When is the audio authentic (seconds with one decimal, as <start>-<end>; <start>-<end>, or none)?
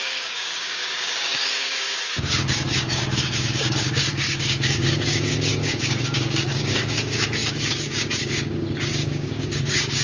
none